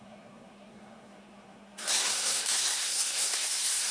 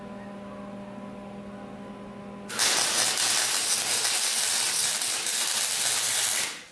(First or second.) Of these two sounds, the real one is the second